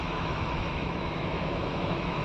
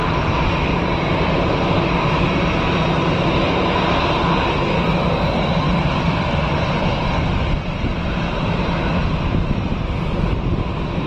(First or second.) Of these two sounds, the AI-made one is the first